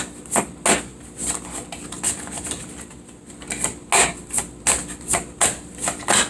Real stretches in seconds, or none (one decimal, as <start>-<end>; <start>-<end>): 0.0-6.3